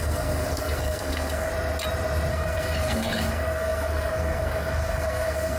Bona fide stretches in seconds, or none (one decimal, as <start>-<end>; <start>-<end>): 1.5-2.3